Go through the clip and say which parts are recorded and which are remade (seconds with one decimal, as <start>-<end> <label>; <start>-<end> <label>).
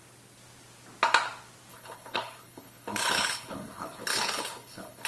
0.0-1.7 recorded; 1.7-5.1 remade